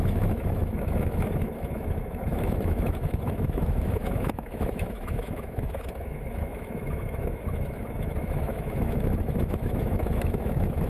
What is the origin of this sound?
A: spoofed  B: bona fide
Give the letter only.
A